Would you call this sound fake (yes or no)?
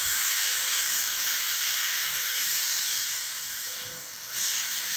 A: yes